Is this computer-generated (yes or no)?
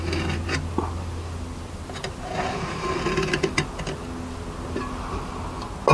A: no